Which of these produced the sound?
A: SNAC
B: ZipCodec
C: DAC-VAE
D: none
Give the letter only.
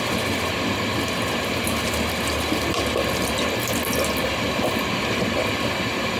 D